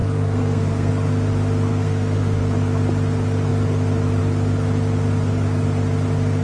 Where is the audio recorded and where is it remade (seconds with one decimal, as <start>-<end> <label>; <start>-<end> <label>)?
0.0-0.9 remade; 0.9-1.7 recorded; 1.7-2.4 remade; 2.4-6.4 recorded